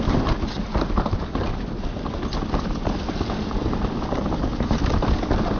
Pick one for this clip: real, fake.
real